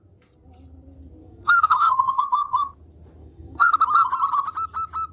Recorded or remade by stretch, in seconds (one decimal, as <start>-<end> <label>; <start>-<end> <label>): 0.0-1.2 recorded; 1.2-2.7 remade; 2.7-3.2 recorded; 3.2-3.7 remade; 3.7-5.1 recorded

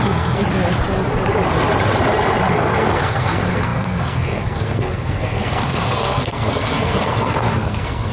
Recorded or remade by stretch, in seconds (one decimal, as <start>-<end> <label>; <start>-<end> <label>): 0.0-0.4 remade; 0.4-2.5 recorded; 2.5-8.1 remade

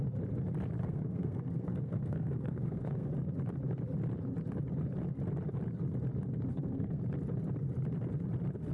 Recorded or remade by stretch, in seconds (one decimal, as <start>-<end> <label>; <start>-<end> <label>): 0.0-0.8 recorded; 0.8-3.1 remade; 3.1-6.5 recorded; 6.5-7.0 remade; 7.0-8.7 recorded

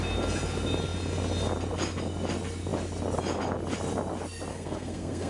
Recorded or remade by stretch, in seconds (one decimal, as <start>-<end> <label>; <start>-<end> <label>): 0.0-4.5 recorded; 4.5-5.3 remade